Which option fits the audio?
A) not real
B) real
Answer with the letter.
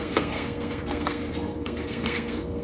A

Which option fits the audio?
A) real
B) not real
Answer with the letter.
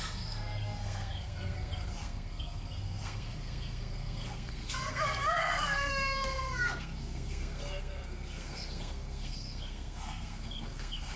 B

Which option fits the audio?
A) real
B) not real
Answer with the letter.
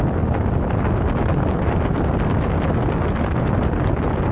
A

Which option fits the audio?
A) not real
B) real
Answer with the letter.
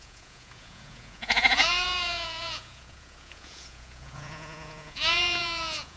A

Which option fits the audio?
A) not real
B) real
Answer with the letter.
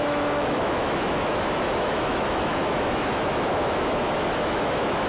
A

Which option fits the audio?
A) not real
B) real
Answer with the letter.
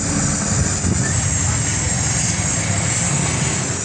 B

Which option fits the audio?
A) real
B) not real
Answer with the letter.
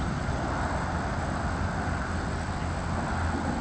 A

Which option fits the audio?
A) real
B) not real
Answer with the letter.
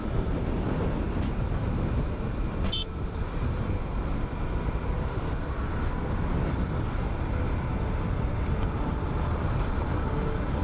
A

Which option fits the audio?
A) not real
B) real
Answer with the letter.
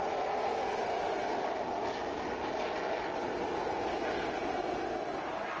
B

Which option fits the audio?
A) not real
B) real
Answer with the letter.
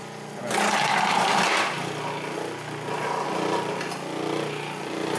B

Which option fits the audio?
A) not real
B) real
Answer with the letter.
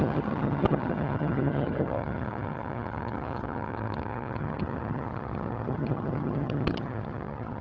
A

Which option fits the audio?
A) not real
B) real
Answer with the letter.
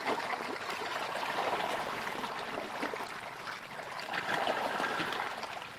B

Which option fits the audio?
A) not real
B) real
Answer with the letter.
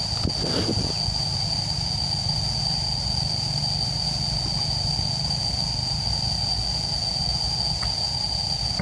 B